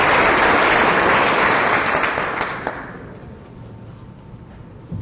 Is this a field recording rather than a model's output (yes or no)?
yes